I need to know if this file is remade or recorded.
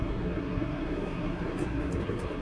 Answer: remade